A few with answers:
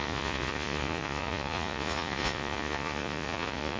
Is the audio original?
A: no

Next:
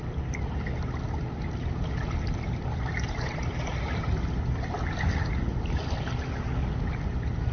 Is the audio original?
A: yes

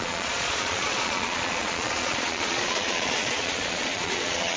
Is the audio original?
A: no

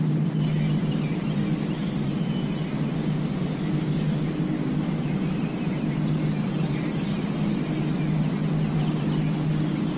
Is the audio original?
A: yes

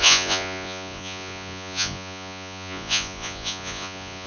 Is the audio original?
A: no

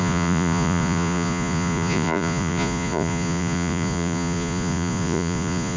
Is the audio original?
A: no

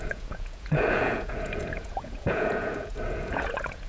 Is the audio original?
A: no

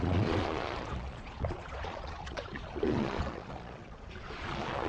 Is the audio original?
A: no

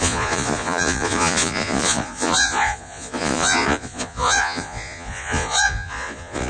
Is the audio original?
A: no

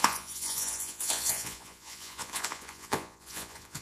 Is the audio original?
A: no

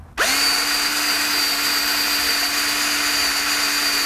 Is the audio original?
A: yes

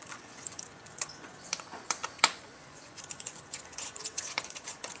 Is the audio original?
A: no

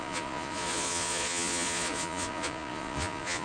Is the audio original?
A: no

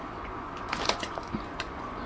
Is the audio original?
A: no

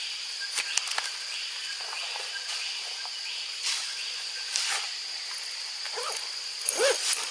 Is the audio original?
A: yes